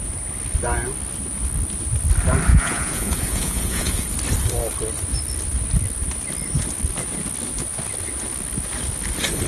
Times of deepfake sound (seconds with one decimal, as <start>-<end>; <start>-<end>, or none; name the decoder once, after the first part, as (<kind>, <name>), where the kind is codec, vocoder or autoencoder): 2.5-4.0 (vocoder, Vocos)